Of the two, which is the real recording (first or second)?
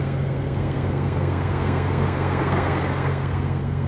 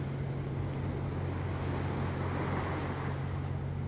second